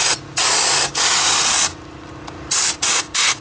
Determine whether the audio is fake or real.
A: real